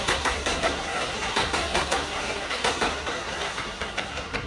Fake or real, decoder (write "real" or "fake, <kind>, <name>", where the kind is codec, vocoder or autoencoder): fake, codec, SNAC